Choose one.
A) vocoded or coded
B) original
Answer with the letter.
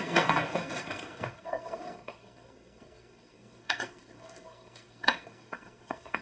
A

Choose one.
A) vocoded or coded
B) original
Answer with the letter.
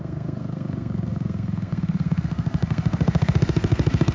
A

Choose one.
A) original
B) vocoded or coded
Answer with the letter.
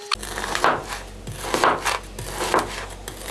A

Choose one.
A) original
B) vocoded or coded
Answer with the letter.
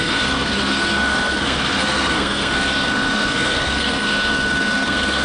B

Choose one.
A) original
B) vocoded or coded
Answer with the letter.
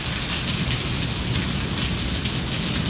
A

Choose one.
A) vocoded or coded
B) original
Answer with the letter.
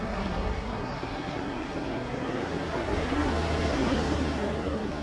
A